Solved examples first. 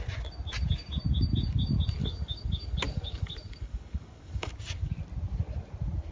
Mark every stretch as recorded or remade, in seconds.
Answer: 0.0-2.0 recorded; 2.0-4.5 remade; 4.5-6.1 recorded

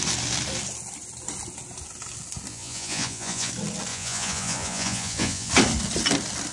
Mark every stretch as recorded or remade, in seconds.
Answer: 0.0-2.5 recorded; 2.5-3.5 remade; 3.5-3.9 recorded; 3.9-5.5 remade; 5.5-6.5 recorded

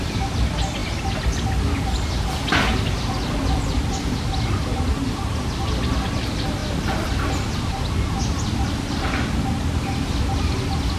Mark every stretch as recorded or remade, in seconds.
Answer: 0.0-11.0 recorded

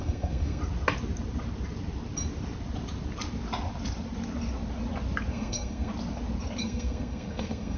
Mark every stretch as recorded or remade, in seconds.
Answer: 0.0-0.6 remade; 0.6-5.3 recorded; 5.3-5.9 remade; 5.9-6.6 recorded; 6.6-7.8 remade